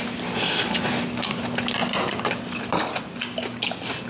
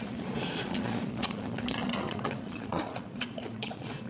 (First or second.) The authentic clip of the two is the first